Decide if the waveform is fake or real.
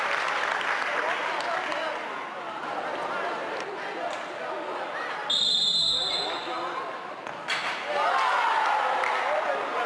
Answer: real